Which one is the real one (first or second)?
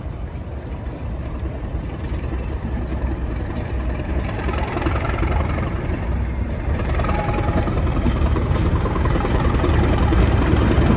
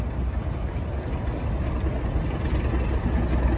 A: second